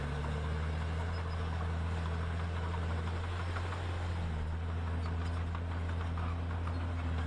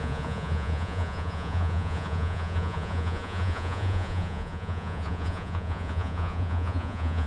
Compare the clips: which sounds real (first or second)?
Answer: first